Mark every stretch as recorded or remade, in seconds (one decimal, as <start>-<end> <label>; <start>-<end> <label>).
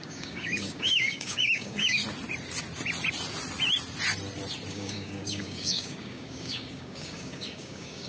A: 0.0-2.0 remade; 2.0-4.7 recorded; 4.7-8.1 remade